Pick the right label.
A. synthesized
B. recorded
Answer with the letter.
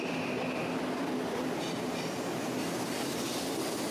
B